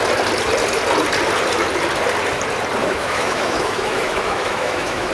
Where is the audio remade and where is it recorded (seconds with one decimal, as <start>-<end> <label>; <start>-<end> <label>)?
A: 0.0-2.8 recorded; 2.8-5.1 remade